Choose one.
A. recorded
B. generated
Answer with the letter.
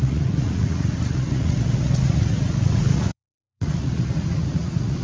B